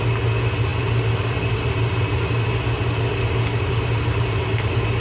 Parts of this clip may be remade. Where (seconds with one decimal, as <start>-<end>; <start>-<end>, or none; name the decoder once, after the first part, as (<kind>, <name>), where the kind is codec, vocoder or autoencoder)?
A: none